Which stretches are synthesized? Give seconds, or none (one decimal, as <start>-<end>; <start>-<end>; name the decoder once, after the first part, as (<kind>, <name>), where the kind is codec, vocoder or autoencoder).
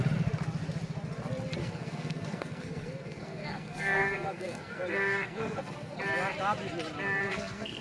1.6-6.0 (codec, SNAC); 7.3-7.8